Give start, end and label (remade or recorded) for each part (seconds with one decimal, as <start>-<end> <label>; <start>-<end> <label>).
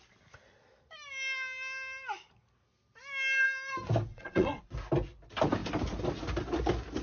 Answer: 0.0-4.1 recorded; 4.1-4.6 remade; 4.6-7.0 recorded